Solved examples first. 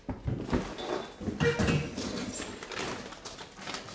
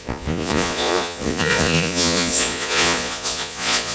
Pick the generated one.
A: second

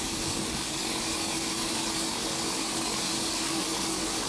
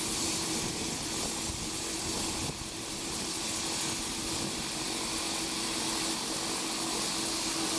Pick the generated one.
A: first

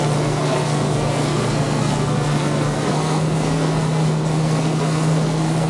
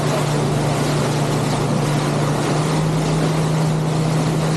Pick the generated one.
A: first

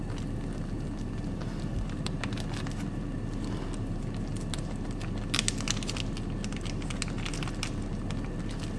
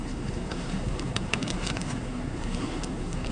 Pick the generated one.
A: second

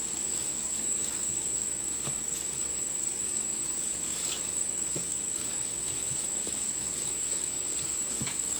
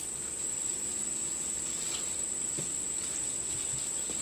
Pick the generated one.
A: first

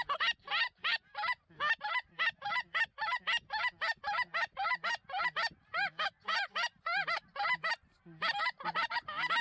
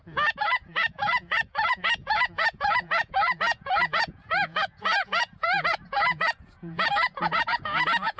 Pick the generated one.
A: second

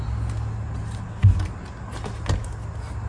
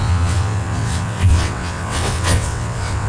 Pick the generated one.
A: second